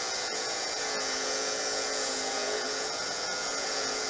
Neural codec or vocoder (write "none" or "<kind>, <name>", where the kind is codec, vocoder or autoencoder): vocoder, Vocos